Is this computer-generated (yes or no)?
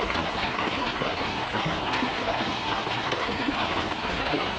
yes